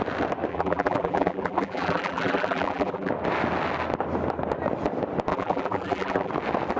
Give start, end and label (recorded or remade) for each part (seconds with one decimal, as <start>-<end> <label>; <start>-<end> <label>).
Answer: 0.0-0.5 recorded; 0.5-3.1 remade; 3.1-5.3 recorded; 5.3-6.3 remade; 6.3-6.8 recorded